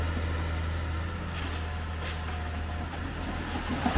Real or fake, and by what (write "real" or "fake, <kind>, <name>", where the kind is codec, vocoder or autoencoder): real